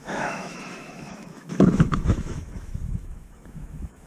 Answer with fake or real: fake